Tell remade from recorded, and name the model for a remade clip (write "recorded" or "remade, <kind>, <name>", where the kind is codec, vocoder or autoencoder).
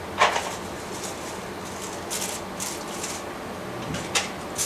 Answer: recorded